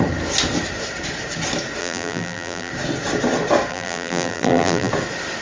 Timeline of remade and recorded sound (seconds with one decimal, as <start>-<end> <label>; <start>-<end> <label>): 0.0-1.8 recorded; 1.8-2.7 remade; 2.7-3.7 recorded; 3.7-4.9 remade; 4.9-5.4 recorded